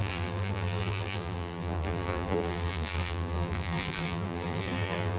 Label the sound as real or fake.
fake